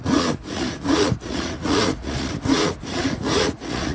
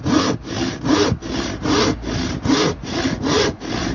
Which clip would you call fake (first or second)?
first